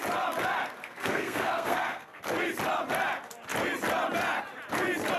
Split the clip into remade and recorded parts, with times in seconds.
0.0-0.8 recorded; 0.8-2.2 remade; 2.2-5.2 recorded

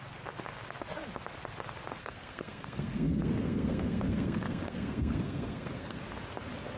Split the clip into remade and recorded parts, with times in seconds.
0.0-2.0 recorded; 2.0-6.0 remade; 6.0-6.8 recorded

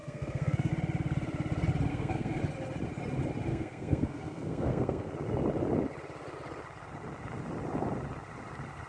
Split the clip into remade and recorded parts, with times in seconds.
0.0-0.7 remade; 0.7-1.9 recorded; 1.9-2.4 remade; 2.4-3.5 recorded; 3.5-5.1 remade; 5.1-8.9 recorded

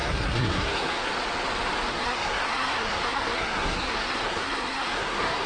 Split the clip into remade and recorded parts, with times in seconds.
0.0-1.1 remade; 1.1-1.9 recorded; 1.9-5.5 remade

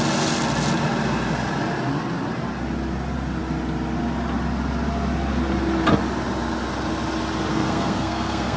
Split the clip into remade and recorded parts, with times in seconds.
0.0-7.5 recorded; 7.5-8.6 remade

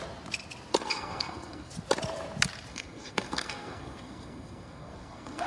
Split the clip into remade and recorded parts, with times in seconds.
0.0-0.7 recorded; 0.7-1.7 remade; 1.7-2.7 recorded; 2.7-5.5 remade